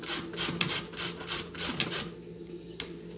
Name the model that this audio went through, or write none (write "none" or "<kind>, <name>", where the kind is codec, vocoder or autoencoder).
none